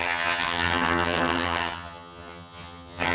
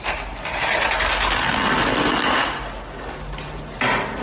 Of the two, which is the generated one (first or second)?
first